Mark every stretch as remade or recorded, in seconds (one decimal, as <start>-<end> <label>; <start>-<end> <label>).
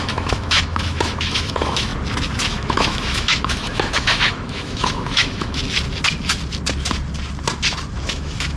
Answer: 0.0-1.9 remade; 1.9-2.5 recorded; 2.5-5.6 remade; 5.6-8.0 recorded; 8.0-8.6 remade